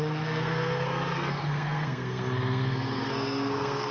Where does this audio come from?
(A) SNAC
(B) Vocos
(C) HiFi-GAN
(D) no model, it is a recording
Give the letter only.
A